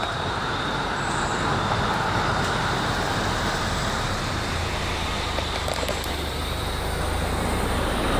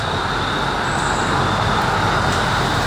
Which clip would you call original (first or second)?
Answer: second